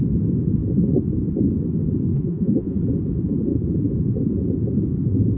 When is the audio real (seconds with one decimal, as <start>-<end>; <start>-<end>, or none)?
0.0-2.1; 2.8-5.4

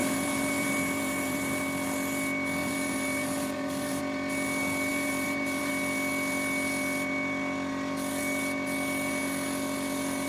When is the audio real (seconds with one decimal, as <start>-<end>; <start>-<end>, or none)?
1.6-2.6; 4.0-4.9; 5.7-10.3

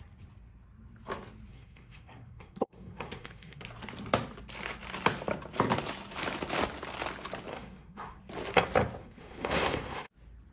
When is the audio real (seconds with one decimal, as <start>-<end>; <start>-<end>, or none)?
0.0-1.5; 3.6-7.5; 8.2-9.0; 10.1-10.5

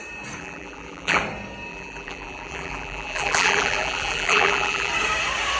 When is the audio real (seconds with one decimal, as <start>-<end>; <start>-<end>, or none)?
0.0-0.4; 1.2-1.7; 4.9-5.6

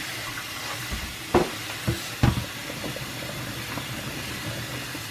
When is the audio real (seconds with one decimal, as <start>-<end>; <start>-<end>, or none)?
0.0-5.1